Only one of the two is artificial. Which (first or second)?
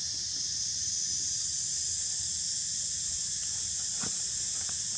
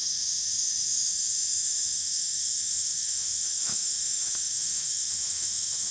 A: second